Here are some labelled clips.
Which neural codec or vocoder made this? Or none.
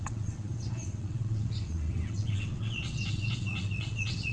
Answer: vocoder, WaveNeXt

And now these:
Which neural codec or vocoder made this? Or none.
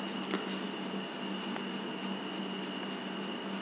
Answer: none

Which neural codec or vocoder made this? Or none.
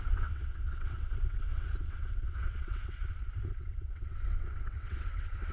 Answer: vocoder, WaveNeXt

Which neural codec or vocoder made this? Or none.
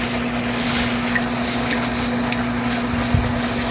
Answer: none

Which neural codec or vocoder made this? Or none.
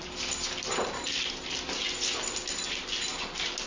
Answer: none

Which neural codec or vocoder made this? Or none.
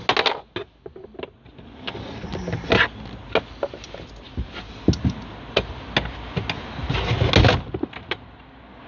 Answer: none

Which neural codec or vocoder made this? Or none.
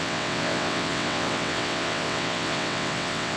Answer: vocoder, WaveNeXt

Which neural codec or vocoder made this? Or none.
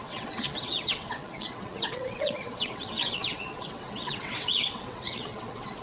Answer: vocoder, WaveNeXt